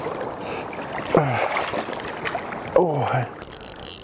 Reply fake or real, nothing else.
real